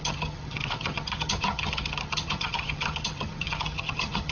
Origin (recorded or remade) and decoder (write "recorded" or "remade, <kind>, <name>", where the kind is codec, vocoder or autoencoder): remade, vocoder, HiFi-GAN